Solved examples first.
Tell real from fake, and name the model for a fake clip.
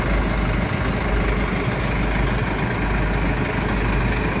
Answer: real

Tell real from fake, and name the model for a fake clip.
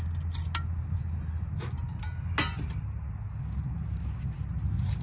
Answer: real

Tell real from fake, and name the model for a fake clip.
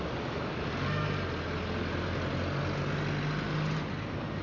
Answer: real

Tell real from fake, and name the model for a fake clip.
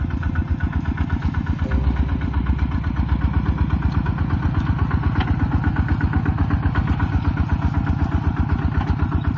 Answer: real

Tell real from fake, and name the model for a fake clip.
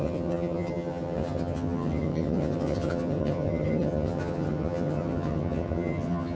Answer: fake, vocoder, HiFi-GAN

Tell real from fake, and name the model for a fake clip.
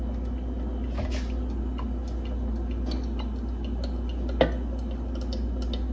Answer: real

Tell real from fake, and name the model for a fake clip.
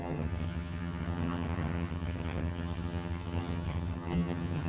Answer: fake, vocoder, HiFi-GAN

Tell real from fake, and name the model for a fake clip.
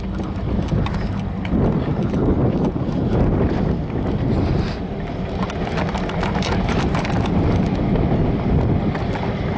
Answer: real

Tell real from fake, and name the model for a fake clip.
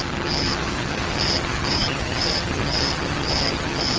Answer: fake, vocoder, HiFi-GAN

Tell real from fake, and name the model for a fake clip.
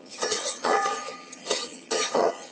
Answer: fake, vocoder, HiFi-GAN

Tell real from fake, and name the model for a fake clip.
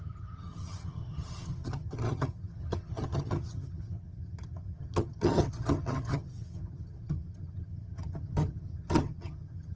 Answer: fake, vocoder, HiFi-GAN